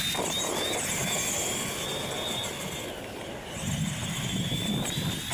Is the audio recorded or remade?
recorded